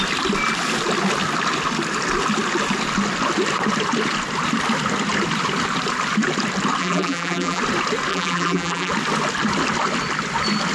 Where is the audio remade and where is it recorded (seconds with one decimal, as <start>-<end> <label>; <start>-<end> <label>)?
0.0-6.8 recorded; 6.8-7.6 remade; 7.6-8.1 recorded; 8.1-8.9 remade; 8.9-10.7 recorded